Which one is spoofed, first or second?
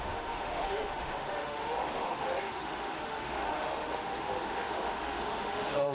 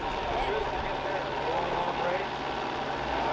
first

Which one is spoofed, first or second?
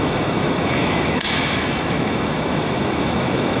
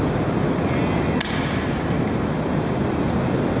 first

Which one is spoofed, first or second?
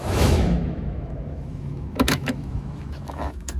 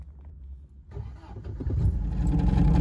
first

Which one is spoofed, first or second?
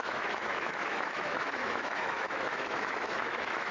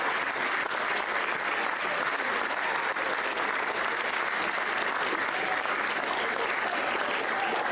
first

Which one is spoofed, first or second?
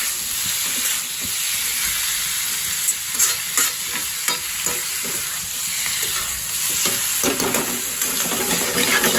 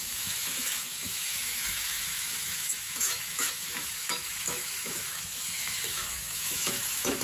second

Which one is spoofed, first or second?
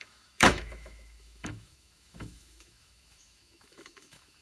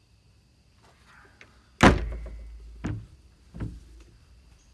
first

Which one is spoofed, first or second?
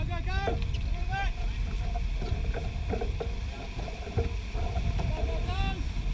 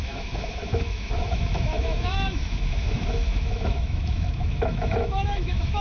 second